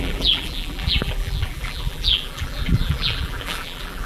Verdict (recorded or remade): remade